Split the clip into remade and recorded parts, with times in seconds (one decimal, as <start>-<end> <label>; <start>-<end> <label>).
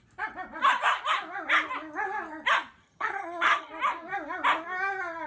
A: 0.0-2.8 recorded; 2.8-3.7 remade; 3.7-5.3 recorded